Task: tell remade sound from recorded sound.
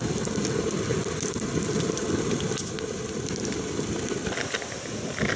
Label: recorded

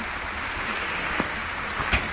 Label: recorded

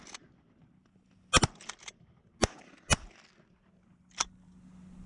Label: recorded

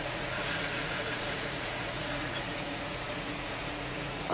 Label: remade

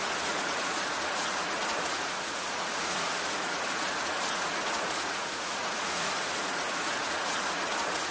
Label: remade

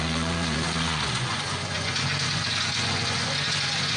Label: remade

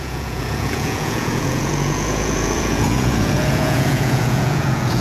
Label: remade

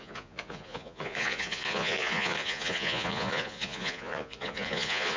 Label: remade